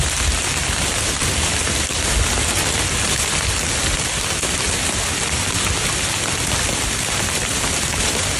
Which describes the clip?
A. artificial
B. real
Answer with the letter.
B